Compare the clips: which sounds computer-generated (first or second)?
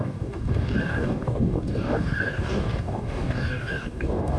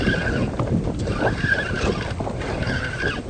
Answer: first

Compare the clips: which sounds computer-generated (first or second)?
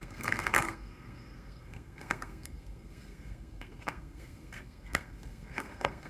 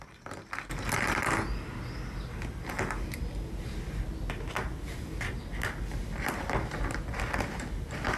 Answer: first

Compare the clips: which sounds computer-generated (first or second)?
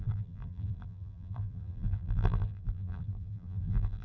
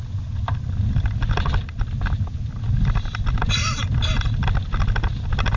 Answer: first